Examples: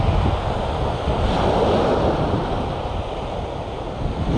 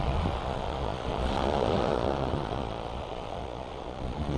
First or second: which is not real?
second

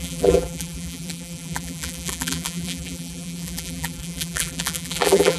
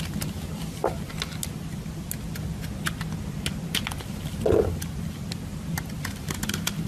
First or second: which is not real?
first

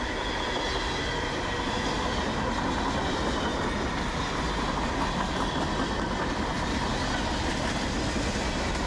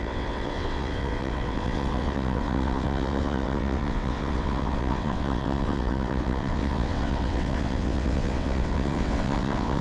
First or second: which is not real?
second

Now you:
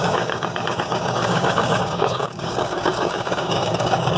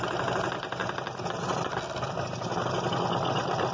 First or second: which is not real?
first